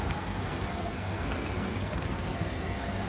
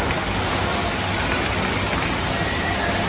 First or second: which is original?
second